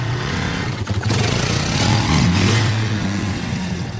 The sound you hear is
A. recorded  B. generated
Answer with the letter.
B